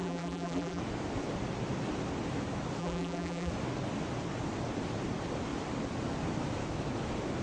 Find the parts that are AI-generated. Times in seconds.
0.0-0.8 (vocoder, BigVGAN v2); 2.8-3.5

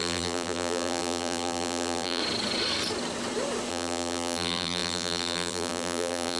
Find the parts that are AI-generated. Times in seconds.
0.0-2.2 (vocoder, BigVGAN v2); 3.7-6.4

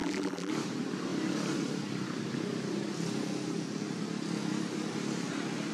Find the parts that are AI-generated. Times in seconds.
0.0-0.5 (vocoder, BigVGAN v2)

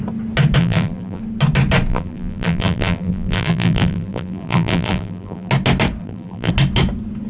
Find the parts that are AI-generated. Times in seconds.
0.6-1.2 (vocoder, BigVGAN v2); 1.9-5.5; 6.0-6.5

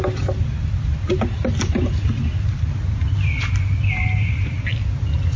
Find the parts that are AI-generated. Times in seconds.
none

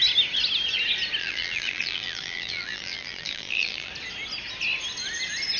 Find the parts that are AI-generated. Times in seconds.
1.2-3.9 (vocoder, BigVGAN v2)

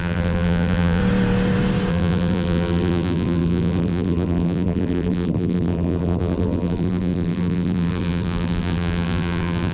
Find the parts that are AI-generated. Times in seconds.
0.0-1.0 (vocoder, BigVGAN v2); 1.9-9.7